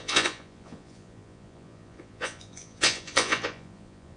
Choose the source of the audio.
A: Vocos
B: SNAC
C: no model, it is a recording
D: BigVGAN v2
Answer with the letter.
A